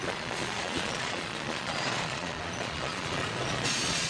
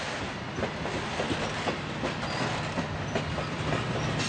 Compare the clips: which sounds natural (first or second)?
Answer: second